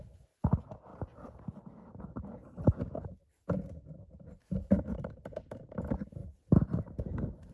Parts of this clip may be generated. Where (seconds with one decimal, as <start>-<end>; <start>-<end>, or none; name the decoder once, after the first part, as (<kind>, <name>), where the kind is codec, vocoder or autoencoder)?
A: none